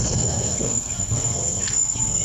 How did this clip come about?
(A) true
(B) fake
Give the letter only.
B